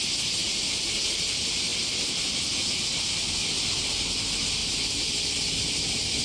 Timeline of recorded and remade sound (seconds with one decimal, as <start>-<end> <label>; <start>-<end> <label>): 0.0-6.2 recorded